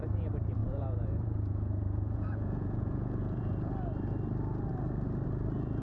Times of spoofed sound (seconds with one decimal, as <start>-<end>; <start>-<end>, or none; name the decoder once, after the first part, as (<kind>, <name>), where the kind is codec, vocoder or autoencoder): 0.6-3.7 (vocoder, Vocos)